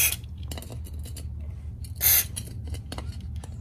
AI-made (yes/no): no